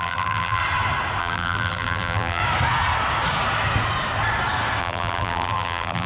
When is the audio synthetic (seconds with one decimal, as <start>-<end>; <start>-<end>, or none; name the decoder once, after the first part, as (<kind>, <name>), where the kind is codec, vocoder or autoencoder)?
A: 0.0-0.6 (vocoder, BigVGAN v2); 1.2-2.4; 4.8-6.1